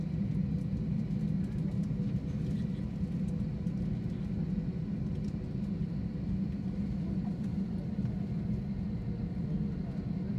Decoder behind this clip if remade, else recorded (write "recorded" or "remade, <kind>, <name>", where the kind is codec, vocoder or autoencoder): recorded